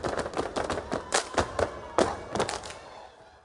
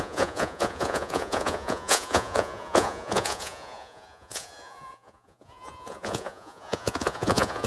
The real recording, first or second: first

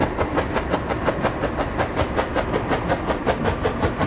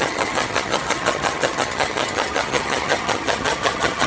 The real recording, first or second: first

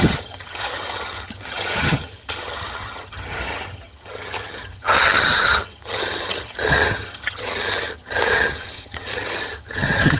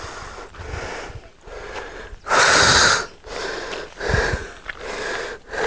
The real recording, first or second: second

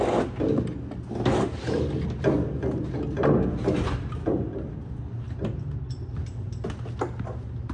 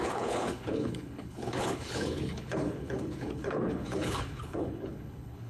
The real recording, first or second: first